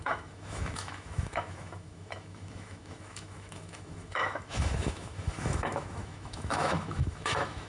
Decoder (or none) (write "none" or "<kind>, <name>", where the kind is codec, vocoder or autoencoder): autoencoder, DAC-VAE